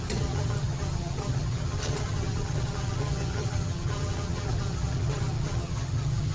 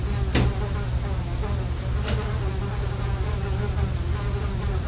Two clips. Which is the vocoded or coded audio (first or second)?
first